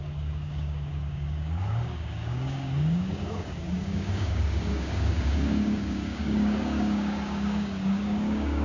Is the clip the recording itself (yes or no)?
no